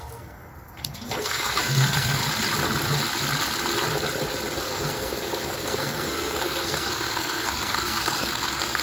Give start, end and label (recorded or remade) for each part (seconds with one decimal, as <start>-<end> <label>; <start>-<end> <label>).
0.0-2.2 remade; 2.2-4.6 recorded; 4.6-8.8 remade